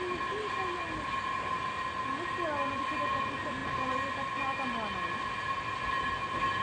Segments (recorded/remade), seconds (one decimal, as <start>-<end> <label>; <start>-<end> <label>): 0.0-6.6 recorded